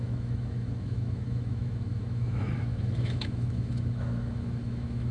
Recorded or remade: remade